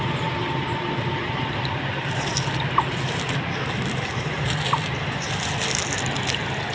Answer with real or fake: real